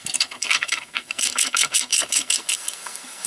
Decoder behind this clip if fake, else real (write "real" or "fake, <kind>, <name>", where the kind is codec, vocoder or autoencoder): fake, codec, SNAC